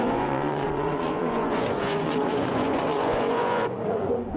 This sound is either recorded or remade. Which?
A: remade